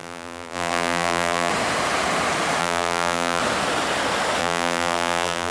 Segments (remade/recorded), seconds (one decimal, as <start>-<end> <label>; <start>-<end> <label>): 0.0-1.5 remade; 1.5-2.6 recorded; 2.6-3.4 remade; 3.4-4.4 recorded; 4.4-5.5 remade